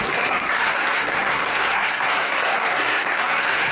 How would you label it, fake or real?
fake